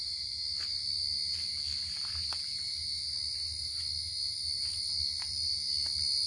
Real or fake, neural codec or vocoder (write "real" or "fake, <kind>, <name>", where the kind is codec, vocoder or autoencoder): real